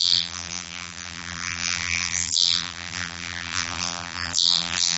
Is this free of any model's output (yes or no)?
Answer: no